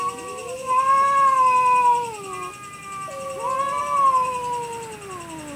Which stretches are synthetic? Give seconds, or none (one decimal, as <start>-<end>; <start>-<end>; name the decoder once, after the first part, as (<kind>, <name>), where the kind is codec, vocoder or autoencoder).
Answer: none